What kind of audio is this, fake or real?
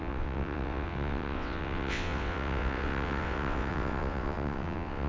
fake